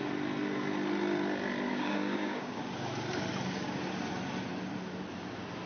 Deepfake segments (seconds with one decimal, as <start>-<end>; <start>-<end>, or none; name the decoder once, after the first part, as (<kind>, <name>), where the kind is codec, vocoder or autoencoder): 1.7-2.6 (codec, DAC)